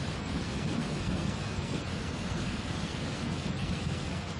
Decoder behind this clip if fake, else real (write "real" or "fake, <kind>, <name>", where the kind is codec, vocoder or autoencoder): fake, codec, SNAC